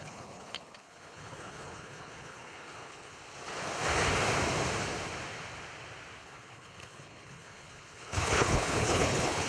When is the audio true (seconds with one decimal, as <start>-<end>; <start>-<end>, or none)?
3.2-6.2